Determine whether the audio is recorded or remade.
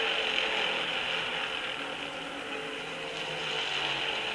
recorded